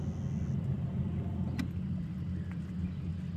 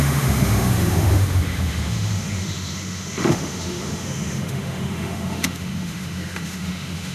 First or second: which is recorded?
first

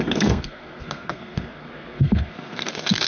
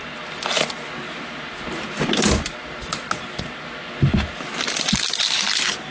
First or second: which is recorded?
second